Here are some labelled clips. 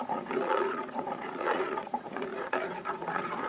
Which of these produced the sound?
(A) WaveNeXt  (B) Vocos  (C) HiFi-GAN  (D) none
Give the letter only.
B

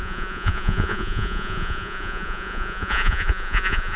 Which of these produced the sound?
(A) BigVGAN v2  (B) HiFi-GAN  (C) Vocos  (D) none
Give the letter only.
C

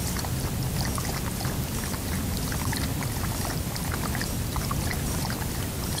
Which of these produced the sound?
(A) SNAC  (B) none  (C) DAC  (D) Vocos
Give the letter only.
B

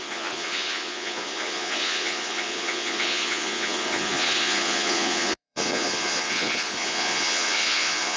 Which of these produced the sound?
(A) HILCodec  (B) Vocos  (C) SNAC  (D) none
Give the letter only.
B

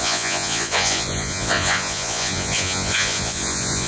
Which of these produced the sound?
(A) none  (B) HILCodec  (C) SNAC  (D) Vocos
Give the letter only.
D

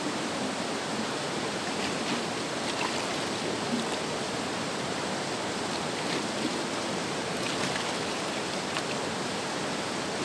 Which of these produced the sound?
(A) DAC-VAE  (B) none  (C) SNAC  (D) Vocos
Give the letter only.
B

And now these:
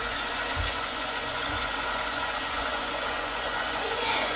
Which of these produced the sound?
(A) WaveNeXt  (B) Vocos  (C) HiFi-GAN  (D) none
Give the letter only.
B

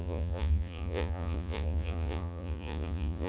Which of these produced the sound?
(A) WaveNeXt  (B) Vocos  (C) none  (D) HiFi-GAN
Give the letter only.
B